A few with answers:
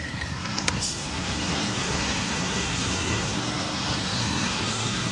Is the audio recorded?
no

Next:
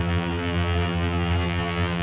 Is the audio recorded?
no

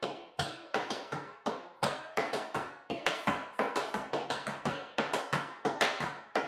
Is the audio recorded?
no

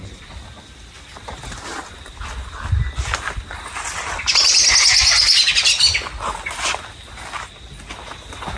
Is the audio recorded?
yes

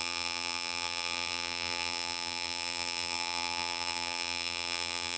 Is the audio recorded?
no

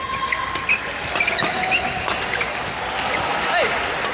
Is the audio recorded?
yes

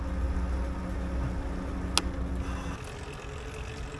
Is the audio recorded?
yes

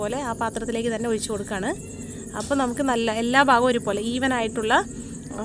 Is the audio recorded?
yes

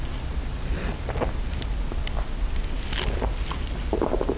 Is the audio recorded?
yes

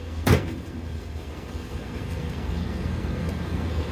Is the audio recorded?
no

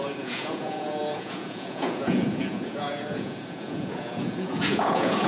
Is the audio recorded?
no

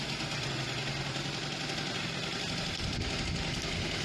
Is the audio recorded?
yes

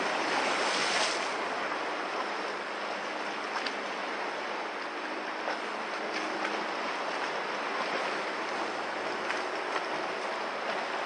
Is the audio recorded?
yes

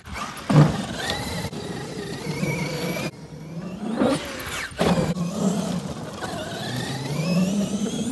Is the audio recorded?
no